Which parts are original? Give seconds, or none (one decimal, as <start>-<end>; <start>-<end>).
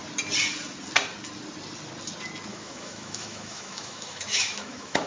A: 0.0-2.5